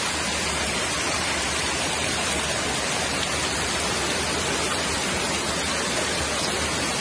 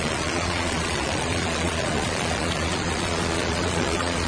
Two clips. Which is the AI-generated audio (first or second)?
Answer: second